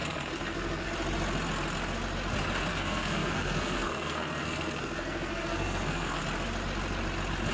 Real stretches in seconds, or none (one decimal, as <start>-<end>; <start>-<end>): 0.9-2.7; 6.2-7.5